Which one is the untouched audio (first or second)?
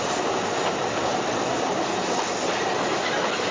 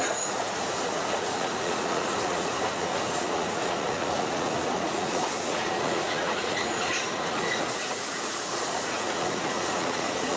first